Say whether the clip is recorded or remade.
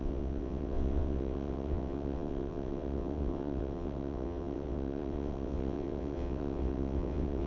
remade